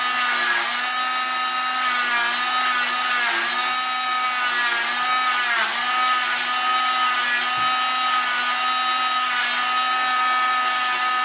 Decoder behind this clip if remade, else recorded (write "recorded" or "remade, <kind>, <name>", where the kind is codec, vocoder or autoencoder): recorded